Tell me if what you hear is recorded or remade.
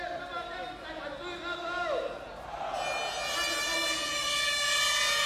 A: recorded